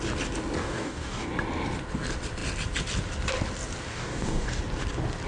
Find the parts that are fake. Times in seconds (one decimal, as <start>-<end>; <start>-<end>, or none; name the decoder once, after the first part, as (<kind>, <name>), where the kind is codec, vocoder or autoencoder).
0.6-1.3 (codec, DAC); 3.9-4.6